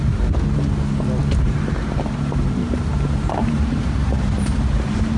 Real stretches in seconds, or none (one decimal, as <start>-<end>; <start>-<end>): 0.0-1.2; 4.1-5.2